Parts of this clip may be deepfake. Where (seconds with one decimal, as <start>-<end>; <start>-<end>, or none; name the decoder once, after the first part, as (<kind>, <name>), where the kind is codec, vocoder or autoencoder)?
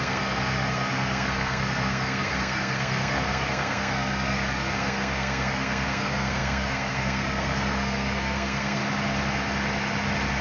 0.0-8.8 (codec, SNAC)